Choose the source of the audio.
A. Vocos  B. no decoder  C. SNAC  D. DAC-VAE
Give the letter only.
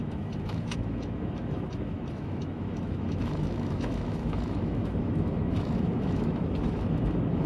D